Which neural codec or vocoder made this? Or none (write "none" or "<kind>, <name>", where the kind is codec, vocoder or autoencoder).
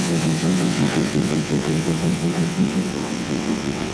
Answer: vocoder, WaveNeXt